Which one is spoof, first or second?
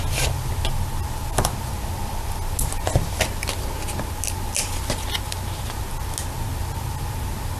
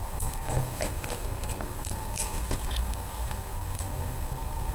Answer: second